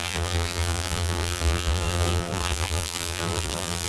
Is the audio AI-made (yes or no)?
yes